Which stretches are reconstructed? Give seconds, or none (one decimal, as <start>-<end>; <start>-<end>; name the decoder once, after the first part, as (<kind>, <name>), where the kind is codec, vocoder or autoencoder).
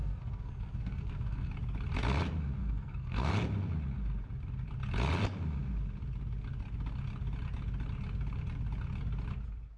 0.0-1.5 (codec, SNAC); 2.6-3.3